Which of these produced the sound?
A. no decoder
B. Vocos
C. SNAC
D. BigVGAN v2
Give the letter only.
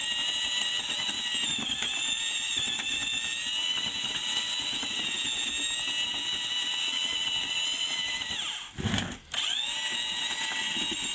A